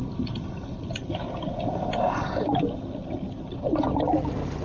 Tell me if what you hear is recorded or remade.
recorded